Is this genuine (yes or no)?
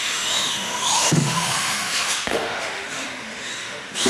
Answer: no